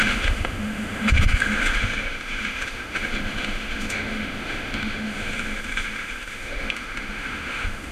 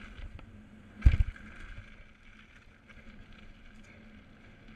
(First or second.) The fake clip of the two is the first